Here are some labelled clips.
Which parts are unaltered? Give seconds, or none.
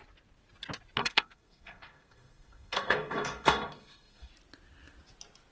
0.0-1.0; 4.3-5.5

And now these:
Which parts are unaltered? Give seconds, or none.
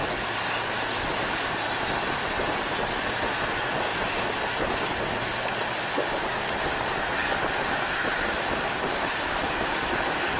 0.0-7.2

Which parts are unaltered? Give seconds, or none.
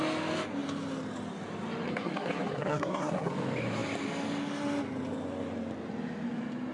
0.0-1.9; 3.3-6.7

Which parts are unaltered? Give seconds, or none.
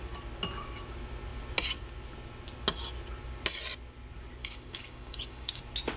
0.0-4.4; 5.6-6.0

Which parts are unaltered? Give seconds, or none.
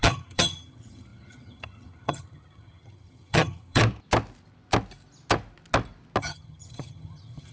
3.8-6.2